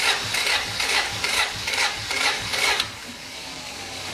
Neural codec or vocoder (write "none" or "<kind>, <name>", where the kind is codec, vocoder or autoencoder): codec, DAC